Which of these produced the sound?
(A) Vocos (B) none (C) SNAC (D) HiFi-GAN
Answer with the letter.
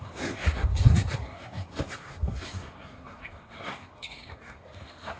C